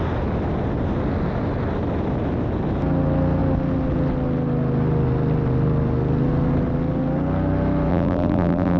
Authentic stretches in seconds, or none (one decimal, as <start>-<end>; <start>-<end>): 0.0-7.9